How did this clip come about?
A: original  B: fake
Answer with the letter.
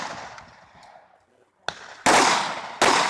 A